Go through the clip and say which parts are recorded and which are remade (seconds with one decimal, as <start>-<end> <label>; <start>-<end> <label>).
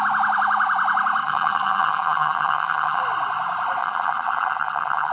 0.0-1.2 recorded; 1.2-3.0 remade; 3.0-3.8 recorded; 3.8-5.1 remade